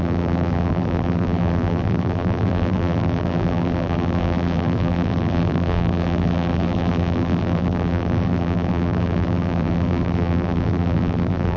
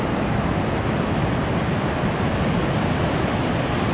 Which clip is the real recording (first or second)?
second